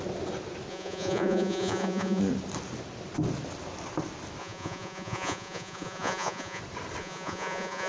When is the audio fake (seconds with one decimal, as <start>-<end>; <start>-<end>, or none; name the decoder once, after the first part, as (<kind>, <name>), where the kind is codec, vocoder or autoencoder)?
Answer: 0.7-2.2 (vocoder, Vocos); 4.4-6.6; 7.0-7.9